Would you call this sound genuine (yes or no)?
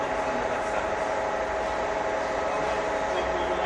yes